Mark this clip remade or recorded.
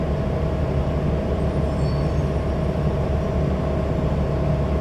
recorded